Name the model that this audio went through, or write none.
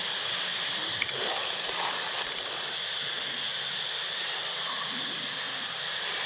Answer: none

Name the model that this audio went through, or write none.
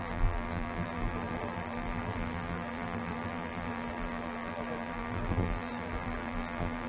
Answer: vocoder, BigVGAN v2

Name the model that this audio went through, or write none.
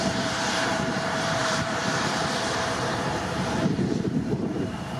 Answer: vocoder, BigVGAN v2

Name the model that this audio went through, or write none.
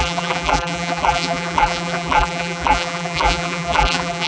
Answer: vocoder, BigVGAN v2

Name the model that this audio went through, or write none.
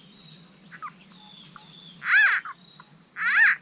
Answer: none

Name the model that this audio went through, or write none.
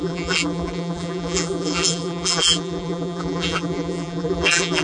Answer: vocoder, BigVGAN v2